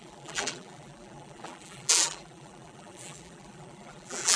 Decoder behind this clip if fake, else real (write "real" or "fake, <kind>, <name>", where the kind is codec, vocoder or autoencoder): fake, vocoder, BigVGAN v2